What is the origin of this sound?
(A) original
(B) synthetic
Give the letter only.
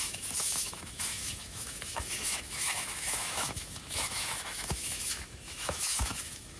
B